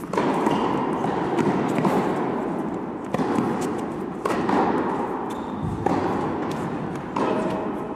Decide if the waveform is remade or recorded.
recorded